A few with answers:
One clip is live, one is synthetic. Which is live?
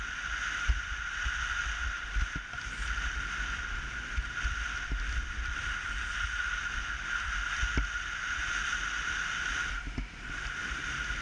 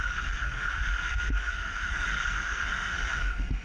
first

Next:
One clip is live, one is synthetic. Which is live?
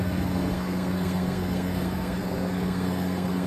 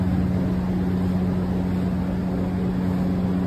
second